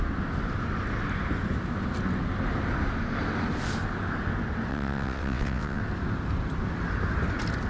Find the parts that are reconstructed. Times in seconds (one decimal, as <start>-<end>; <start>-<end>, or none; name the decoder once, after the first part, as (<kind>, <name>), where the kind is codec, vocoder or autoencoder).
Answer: 4.7-5.8 (vocoder, WaveNeXt)